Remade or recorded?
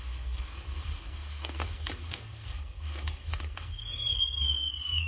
remade